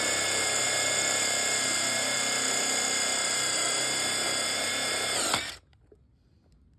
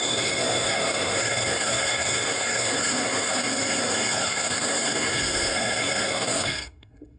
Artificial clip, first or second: second